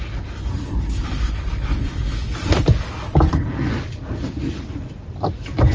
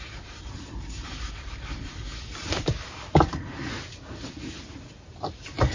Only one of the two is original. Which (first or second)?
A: first